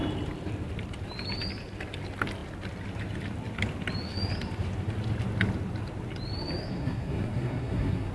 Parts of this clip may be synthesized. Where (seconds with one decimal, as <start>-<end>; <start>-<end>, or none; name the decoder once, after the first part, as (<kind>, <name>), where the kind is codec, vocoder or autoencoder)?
6.7-8.1 (codec, SNAC)